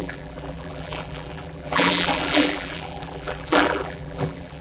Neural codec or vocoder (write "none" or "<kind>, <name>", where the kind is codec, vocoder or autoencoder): vocoder, BigVGAN v2